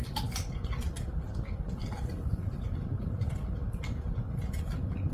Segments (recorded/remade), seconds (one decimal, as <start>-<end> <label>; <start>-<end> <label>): 0.0-5.1 recorded